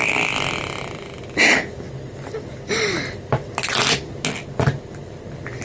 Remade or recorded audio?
recorded